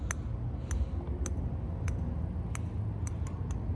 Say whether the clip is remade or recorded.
recorded